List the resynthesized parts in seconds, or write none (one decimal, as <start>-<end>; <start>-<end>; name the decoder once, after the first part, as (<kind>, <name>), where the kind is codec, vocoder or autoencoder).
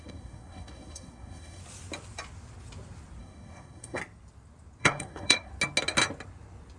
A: 0.0-1.6 (codec, SNAC); 3.2-4.0; 4.8-5.5